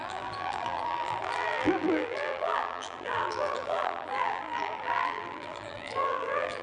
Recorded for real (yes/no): no